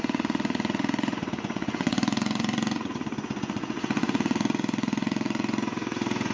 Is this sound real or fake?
fake